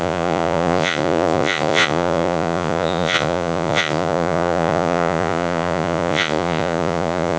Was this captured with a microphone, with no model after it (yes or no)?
no